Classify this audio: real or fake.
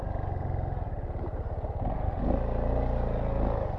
real